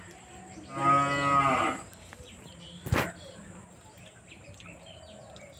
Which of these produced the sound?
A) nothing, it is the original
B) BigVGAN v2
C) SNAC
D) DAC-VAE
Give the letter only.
A